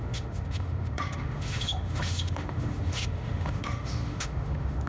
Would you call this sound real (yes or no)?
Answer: no